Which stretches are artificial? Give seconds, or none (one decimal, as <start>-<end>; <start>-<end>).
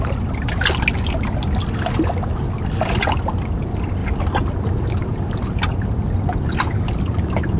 none